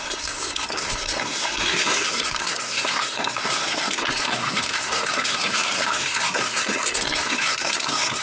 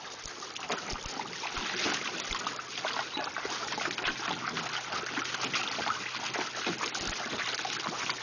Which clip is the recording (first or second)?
second